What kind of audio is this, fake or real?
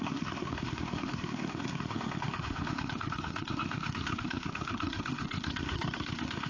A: fake